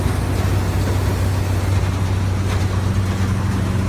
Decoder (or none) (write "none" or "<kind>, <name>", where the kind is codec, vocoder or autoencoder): none